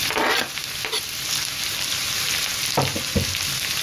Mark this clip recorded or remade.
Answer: recorded